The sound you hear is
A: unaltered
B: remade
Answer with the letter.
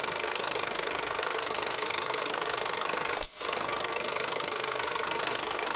B